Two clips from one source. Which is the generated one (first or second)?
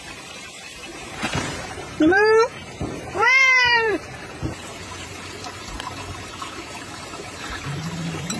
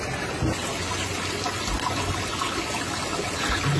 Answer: first